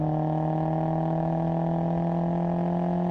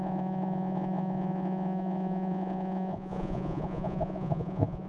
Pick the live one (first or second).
first